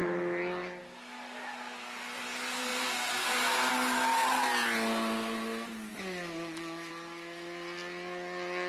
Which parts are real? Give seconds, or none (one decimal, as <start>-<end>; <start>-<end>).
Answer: 0.0-5.9; 6.9-8.7